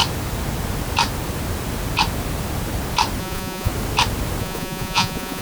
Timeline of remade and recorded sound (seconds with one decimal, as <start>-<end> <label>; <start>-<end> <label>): 0.0-3.2 recorded; 3.2-3.7 remade; 3.7-4.4 recorded; 4.4-5.4 remade